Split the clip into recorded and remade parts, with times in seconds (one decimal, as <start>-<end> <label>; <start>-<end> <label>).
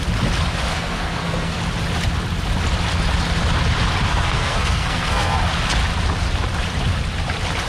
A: 0.0-0.7 recorded; 0.7-1.6 remade; 1.6-4.1 recorded; 4.1-5.4 remade; 5.4-7.7 recorded